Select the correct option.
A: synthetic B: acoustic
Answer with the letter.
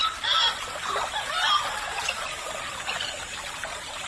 B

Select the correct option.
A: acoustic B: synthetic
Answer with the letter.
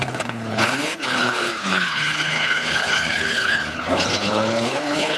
B